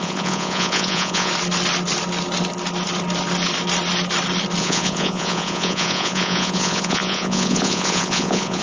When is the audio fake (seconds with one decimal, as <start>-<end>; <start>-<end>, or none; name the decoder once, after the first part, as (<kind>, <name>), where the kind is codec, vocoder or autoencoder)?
0.0-1.3 (vocoder, Vocos); 4.6-8.6